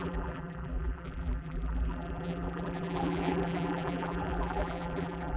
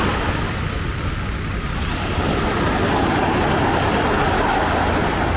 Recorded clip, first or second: second